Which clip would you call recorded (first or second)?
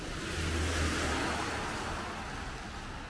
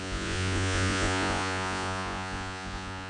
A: first